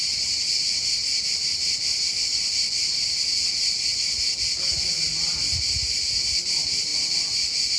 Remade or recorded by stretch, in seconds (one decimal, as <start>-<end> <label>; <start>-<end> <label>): 0.0-7.8 recorded